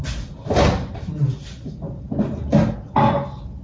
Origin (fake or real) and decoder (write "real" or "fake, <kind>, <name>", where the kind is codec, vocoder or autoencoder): real